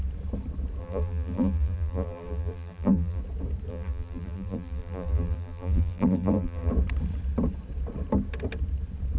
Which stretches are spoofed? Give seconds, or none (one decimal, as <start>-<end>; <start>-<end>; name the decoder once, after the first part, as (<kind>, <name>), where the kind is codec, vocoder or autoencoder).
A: 0.8-3.2 (vocoder, BigVGAN v2); 3.7-6.7